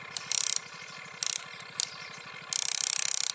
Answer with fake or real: real